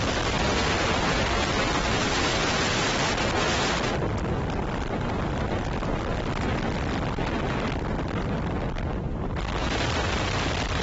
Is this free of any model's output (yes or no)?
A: yes